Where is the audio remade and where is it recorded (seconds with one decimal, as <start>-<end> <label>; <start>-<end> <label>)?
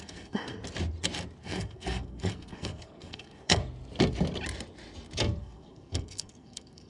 0.0-0.6 remade; 0.6-1.4 recorded; 1.4-3.6 remade; 3.6-5.4 recorded; 5.4-6.9 remade